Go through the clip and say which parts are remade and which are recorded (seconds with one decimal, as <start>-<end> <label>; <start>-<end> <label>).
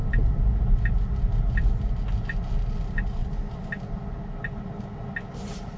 0.0-2.8 recorded; 2.8-3.2 remade; 3.2-5.8 recorded